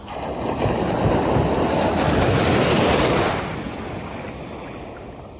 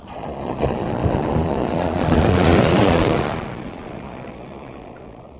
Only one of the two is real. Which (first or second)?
first